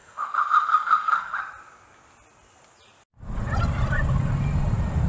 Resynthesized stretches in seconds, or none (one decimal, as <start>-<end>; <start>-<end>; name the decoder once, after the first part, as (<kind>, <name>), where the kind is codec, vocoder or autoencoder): 0.0-1.4 (autoencoder, DAC-VAE)